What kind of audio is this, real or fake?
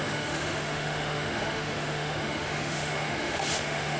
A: fake